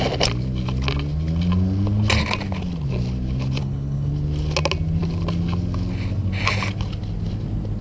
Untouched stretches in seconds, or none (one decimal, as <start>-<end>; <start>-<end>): 0.0-3.6; 4.1-7.8